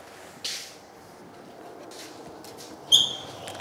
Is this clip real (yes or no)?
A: yes